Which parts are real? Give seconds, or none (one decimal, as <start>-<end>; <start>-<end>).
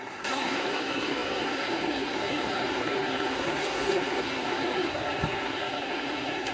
none